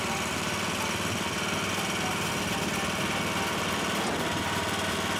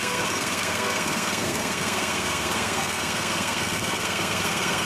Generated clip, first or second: second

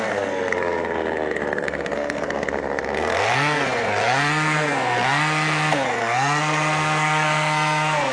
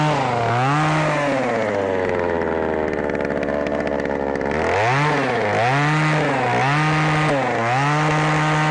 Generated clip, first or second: first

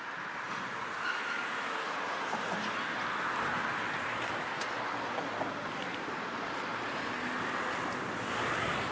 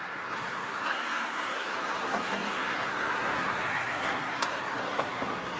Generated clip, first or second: second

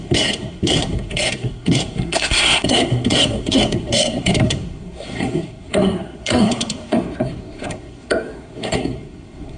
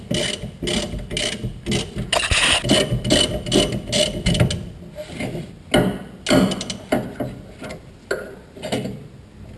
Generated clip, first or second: first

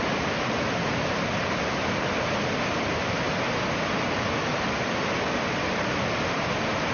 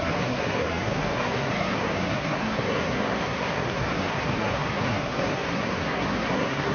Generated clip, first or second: second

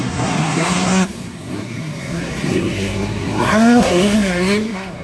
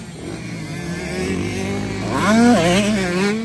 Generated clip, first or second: first